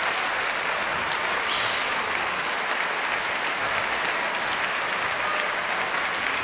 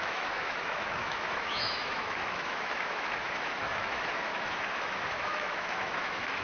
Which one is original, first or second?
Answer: first